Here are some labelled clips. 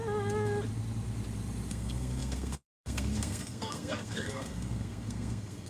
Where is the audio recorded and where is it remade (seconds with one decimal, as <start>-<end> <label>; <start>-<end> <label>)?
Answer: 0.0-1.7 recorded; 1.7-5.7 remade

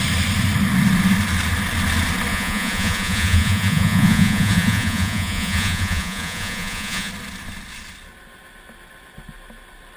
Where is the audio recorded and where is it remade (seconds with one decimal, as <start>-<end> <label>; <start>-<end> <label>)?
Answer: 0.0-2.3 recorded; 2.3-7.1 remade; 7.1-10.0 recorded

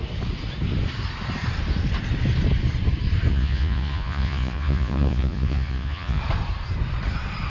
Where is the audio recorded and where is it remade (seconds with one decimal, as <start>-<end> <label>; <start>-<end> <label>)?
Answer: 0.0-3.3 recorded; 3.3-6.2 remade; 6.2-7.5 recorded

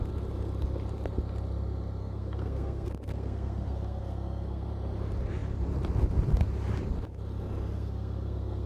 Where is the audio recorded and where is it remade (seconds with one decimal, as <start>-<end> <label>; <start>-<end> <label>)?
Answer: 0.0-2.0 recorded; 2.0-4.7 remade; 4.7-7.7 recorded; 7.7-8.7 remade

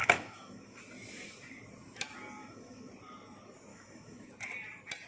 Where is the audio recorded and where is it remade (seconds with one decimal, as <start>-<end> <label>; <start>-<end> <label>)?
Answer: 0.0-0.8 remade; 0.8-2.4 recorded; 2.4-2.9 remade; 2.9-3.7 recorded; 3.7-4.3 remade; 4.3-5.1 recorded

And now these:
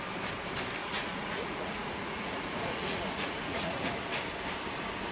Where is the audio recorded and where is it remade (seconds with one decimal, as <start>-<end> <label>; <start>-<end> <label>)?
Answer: 0.0-0.8 recorded; 0.8-3.9 remade; 3.9-5.1 recorded

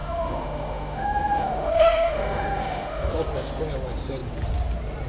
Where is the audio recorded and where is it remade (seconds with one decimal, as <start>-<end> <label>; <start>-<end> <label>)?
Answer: 0.0-3.1 remade; 3.1-5.1 recorded

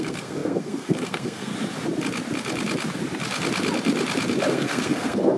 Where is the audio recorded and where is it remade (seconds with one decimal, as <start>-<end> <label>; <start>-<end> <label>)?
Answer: 0.0-1.5 remade; 1.5-4.5 recorded; 4.5-5.4 remade